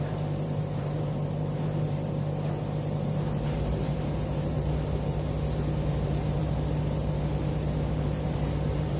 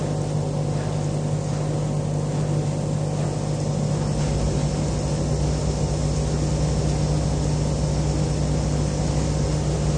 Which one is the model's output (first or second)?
first